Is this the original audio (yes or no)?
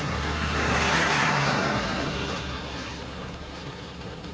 no